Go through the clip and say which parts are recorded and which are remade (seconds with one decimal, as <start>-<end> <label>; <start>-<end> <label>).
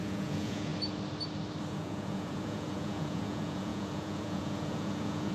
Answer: 0.0-0.7 remade; 0.7-1.7 recorded; 1.7-5.3 remade